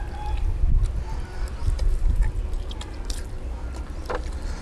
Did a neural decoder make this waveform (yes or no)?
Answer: no